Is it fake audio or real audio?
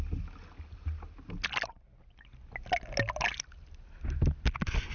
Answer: real